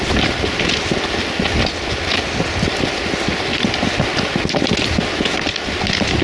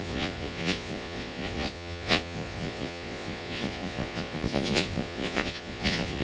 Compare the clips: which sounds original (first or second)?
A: first